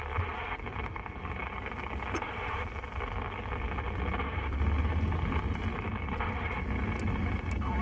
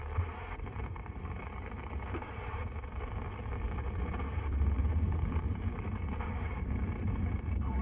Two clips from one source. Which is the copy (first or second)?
second